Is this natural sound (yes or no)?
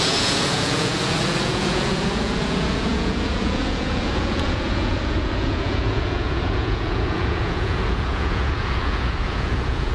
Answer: no